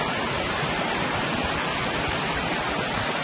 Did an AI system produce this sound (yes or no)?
no